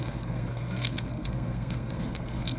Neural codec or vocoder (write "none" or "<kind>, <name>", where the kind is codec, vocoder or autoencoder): codec, SNAC